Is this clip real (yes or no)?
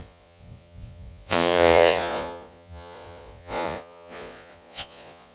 no